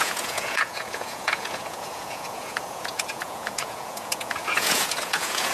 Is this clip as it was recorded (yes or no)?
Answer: no